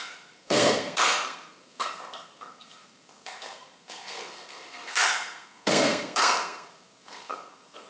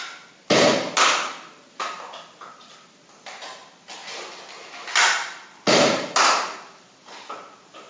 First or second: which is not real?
first